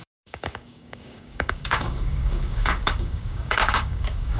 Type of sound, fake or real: fake